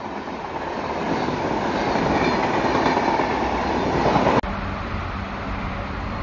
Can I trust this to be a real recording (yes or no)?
yes